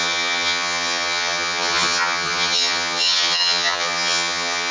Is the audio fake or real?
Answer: fake